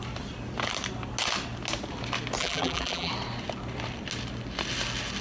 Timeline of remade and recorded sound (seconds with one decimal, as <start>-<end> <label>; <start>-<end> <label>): 0.0-2.4 recorded; 2.4-3.1 remade; 3.1-5.2 recorded